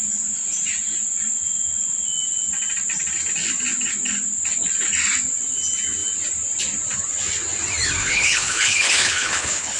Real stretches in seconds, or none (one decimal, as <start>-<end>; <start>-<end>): 0.0-8.0